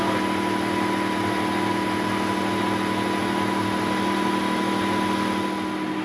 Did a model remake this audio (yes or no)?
no